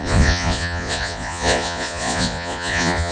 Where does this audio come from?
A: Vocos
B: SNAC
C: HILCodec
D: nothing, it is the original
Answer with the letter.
A